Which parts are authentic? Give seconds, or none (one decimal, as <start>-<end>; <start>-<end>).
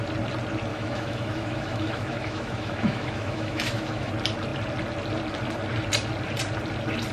0.0-0.7; 4.1-7.1